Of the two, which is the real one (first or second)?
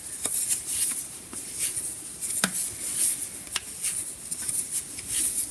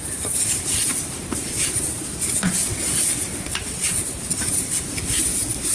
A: first